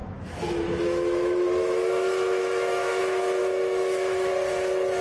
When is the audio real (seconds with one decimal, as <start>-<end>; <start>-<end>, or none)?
3.0-3.4; 4.3-5.0